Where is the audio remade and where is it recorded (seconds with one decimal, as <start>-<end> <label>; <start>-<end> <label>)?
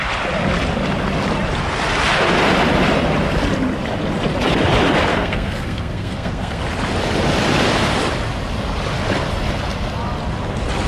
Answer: 0.0-5.1 recorded; 5.1-6.6 remade; 6.6-10.9 recorded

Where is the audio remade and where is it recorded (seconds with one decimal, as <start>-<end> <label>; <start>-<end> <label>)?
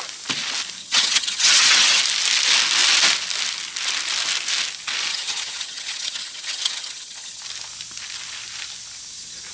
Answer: 0.0-0.8 recorded; 0.8-2.0 remade; 2.0-5.1 recorded; 5.1-7.4 remade; 7.4-9.5 recorded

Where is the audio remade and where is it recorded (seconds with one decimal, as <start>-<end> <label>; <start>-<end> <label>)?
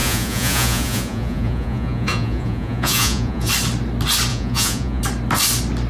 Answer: 0.0-3.5 remade; 3.5-4.3 recorded; 4.3-5.0 remade; 5.0-5.9 recorded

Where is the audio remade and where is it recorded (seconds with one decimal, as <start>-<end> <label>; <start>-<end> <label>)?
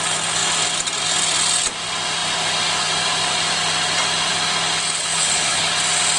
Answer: 0.0-5.0 recorded; 5.0-5.7 remade; 5.7-6.2 recorded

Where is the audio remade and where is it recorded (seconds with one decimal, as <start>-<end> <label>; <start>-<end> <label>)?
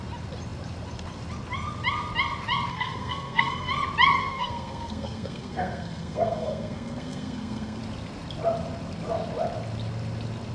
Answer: 0.0-2.7 recorded; 2.7-3.7 remade; 3.7-4.2 recorded; 4.2-7.8 remade; 7.8-10.5 recorded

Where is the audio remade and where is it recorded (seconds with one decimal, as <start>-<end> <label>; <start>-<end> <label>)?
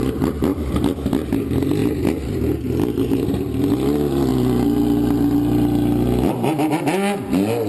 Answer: 0.0-0.5 recorded; 0.5-1.1 remade; 1.1-7.7 recorded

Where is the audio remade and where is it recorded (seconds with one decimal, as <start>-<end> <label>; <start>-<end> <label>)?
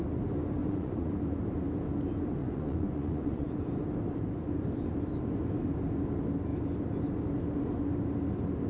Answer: 0.0-0.6 recorded; 0.6-1.1 remade; 1.1-2.4 recorded; 2.4-3.5 remade; 3.5-8.7 recorded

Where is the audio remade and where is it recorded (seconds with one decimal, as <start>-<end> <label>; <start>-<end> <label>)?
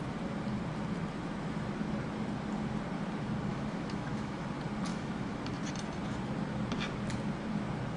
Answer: 0.0-3.5 recorded; 3.5-4.4 remade; 4.4-4.9 recorded; 4.9-5.4 remade; 5.4-8.0 recorded